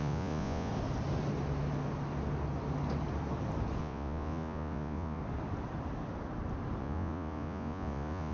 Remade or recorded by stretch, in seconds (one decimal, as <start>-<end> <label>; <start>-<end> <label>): 0.0-0.7 remade; 0.7-3.8 recorded; 3.8-5.2 remade; 5.2-6.8 recorded; 6.8-8.3 remade